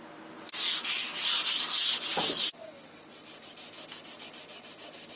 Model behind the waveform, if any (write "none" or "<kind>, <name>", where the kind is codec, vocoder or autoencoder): none